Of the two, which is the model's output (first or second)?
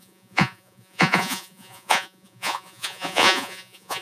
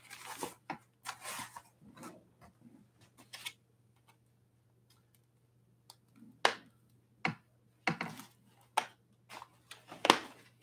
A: first